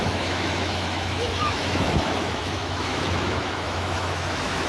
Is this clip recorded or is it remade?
remade